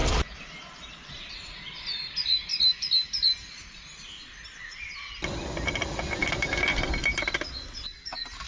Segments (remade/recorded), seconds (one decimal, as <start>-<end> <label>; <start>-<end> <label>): 0.0-6.2 recorded; 6.2-7.7 remade; 7.7-8.5 recorded